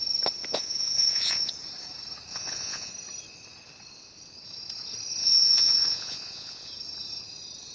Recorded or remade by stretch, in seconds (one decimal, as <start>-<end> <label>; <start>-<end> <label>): 0.0-0.4 recorded; 0.4-1.5 remade; 1.5-2.3 recorded; 2.3-2.9 remade; 2.9-5.2 recorded; 5.2-6.7 remade; 6.7-7.7 recorded